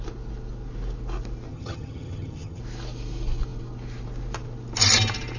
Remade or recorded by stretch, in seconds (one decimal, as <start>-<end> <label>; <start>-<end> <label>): 0.0-1.5 recorded; 1.5-2.6 remade; 2.6-5.4 recorded